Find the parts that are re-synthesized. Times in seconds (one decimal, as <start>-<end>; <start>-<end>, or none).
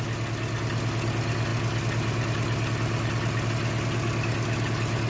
none